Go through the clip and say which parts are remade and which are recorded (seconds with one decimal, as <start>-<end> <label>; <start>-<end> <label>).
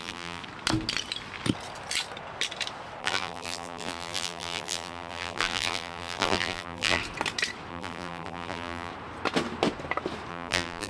0.0-0.4 remade; 0.4-3.0 recorded; 3.0-7.0 remade; 7.0-7.7 recorded; 7.7-8.9 remade; 8.9-10.3 recorded; 10.3-10.9 remade